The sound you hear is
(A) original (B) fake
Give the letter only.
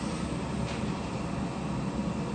A